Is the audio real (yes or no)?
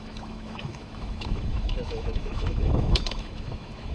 no